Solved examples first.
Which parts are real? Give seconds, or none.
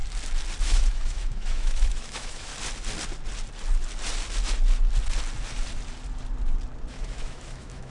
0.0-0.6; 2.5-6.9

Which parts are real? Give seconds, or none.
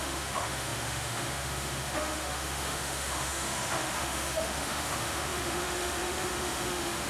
none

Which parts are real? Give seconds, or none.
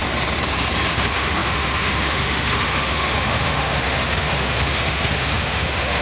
0.0-0.9